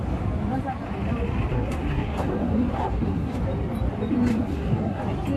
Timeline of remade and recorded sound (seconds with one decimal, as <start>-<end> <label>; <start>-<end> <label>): 0.0-1.5 recorded; 1.5-3.4 remade; 3.4-4.3 recorded; 4.3-5.0 remade; 5.0-5.4 recorded